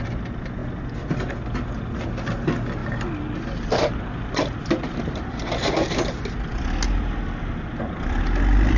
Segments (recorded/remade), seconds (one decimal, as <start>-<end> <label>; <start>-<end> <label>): 0.0-8.8 recorded